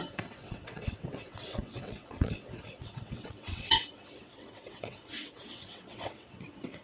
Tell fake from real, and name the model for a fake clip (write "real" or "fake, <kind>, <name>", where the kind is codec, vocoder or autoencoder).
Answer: fake, vocoder, WaveNeXt